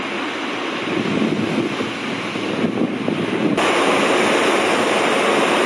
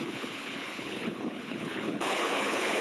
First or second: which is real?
first